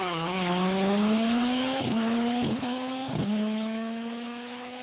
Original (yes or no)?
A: no